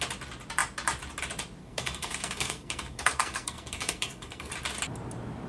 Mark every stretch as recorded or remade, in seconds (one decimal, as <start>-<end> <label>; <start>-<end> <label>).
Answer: 0.0-1.6 recorded; 1.6-4.5 remade; 4.5-5.5 recorded